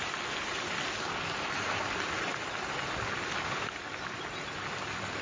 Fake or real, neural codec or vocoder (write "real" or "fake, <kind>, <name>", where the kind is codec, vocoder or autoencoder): real